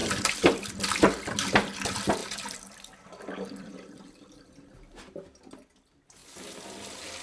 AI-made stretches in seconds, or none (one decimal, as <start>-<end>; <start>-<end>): 2.2-4.4